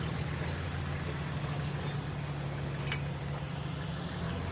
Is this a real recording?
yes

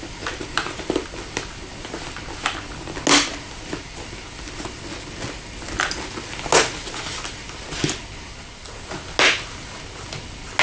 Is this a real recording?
yes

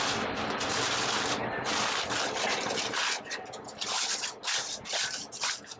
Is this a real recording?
yes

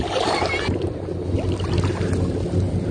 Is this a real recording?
yes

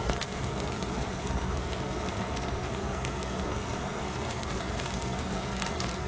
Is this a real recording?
no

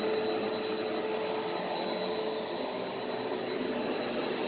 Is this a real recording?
yes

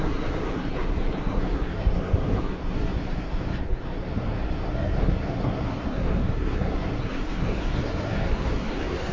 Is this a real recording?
no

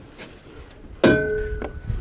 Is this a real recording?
yes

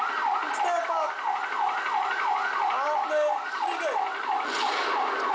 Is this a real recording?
yes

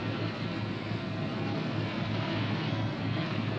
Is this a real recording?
no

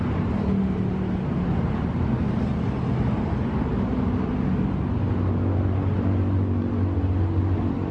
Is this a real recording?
yes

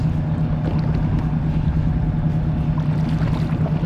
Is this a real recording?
yes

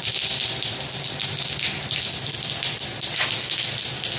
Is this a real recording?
yes